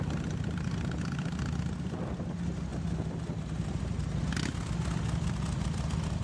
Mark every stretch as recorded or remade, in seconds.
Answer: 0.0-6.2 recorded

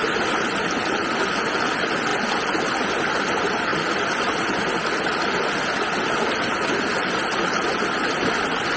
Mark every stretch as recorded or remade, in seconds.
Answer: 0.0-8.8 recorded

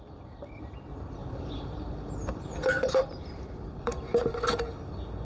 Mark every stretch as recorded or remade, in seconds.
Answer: 0.0-1.2 recorded; 1.2-4.3 remade; 4.3-5.2 recorded

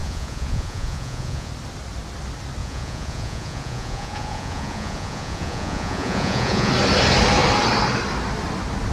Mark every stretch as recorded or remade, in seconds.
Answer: 0.0-1.5 remade; 1.5-2.6 recorded; 2.6-6.7 remade; 6.7-8.9 recorded

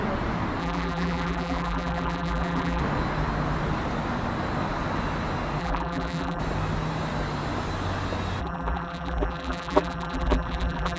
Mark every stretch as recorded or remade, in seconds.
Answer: 0.0-0.6 recorded; 0.6-2.8 remade; 2.8-5.6 recorded; 5.6-6.4 remade; 6.4-8.4 recorded; 8.4-11.0 remade

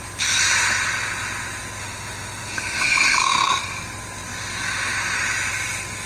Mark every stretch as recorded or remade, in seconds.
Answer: 0.0-1.8 recorded; 1.8-3.6 remade; 3.6-6.1 recorded